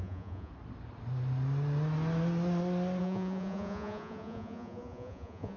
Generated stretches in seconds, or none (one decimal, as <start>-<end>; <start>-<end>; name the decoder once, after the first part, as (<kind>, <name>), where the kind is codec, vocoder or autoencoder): 0.0-0.5 (vocoder, Vocos); 3.0-5.6